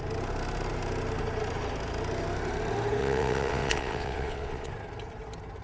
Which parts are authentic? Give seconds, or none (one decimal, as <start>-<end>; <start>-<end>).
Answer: 0.0-3.0; 4.7-5.6